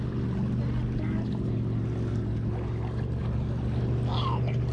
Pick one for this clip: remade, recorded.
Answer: recorded